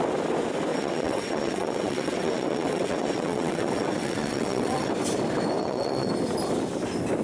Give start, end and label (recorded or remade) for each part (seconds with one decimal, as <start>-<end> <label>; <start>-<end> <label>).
0.0-0.7 recorded; 0.7-4.9 remade; 4.9-5.6 recorded; 5.6-6.1 remade; 6.1-7.2 recorded